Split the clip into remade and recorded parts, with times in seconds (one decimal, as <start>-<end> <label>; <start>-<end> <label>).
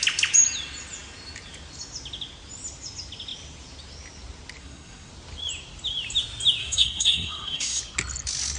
0.0-4.6 recorded; 4.6-5.1 remade; 5.1-6.6 recorded; 6.6-7.8 remade; 7.8-8.6 recorded